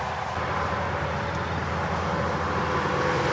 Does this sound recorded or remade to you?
recorded